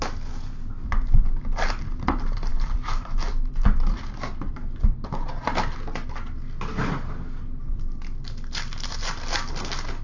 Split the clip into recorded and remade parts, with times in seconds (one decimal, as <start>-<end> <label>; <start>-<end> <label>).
0.0-2.5 recorded; 2.5-3.2 remade; 3.2-10.0 recorded